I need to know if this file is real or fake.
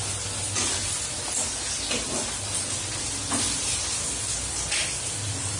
real